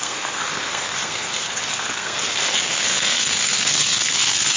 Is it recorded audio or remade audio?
remade